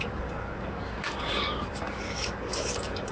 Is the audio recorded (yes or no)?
no